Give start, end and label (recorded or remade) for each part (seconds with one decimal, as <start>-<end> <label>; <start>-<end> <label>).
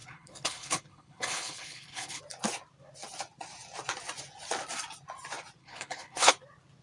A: 0.0-2.2 remade; 2.2-5.6 recorded; 5.6-6.3 remade; 6.3-6.8 recorded